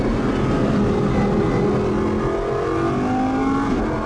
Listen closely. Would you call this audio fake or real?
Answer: real